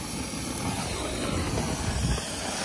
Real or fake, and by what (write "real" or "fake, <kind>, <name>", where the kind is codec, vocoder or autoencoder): real